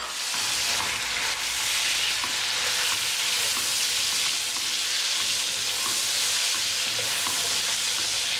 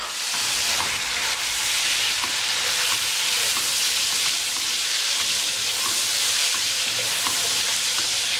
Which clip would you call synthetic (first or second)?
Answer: second